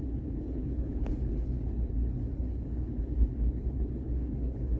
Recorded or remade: remade